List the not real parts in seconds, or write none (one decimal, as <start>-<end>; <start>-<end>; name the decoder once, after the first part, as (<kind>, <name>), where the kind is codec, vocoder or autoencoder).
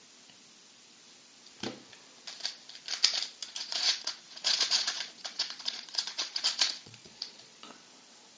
3.4-7.8 (vocoder, Vocos)